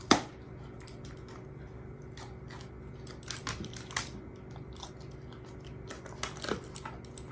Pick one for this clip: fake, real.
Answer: real